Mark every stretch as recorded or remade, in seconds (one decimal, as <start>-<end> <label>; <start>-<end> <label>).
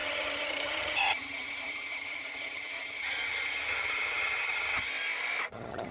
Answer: 0.0-4.9 remade; 4.9-5.5 recorded; 5.5-5.9 remade